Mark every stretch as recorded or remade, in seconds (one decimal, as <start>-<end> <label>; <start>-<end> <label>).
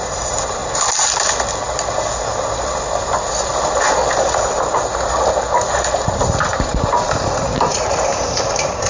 0.0-0.6 remade; 0.6-5.1 recorded; 5.1-8.9 remade